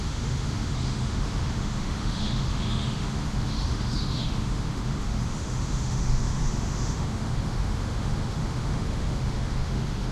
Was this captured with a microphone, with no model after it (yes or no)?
no